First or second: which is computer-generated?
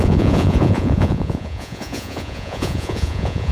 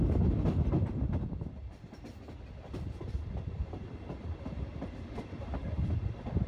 first